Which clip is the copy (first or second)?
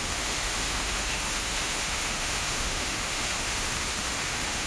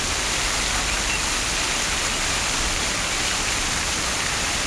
first